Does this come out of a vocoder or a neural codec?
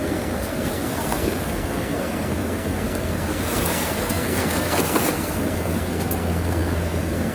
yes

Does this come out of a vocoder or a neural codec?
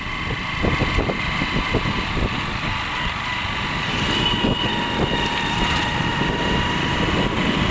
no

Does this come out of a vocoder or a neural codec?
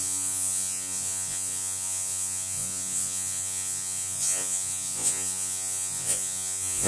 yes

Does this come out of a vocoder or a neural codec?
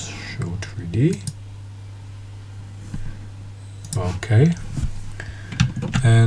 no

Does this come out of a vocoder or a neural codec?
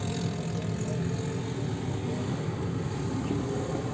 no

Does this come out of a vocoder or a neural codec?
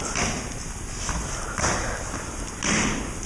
no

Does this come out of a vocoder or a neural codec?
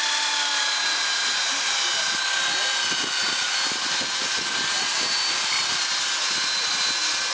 no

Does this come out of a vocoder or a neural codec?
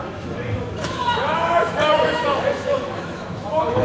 yes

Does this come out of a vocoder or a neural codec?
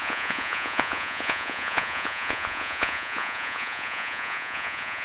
yes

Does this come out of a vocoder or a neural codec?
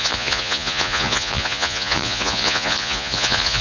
yes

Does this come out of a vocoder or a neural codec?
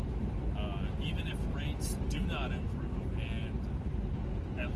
no